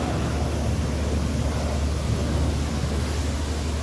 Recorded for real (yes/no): yes